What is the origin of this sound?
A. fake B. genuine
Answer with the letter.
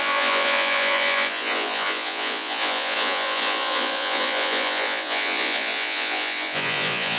A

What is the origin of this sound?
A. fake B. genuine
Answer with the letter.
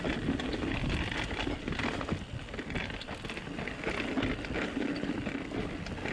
B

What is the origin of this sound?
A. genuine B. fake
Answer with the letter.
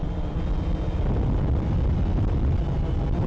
A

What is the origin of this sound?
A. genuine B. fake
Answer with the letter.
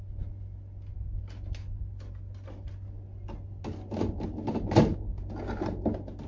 A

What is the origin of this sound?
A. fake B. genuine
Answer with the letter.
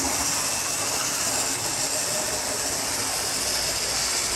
B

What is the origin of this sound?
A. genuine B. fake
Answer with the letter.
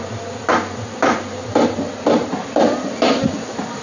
A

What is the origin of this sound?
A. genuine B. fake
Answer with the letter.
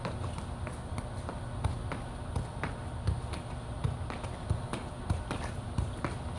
A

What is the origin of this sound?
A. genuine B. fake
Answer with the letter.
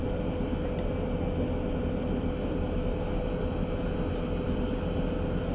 A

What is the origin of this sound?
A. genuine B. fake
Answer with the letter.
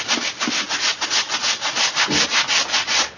A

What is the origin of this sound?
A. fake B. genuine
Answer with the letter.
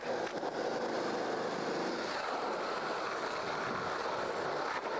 B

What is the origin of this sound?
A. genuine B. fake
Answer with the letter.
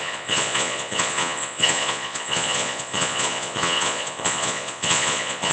B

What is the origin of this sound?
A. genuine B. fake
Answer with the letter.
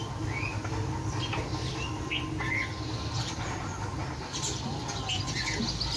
A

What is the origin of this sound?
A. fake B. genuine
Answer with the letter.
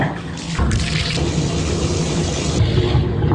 B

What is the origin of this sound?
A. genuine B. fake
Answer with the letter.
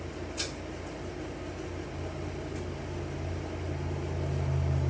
A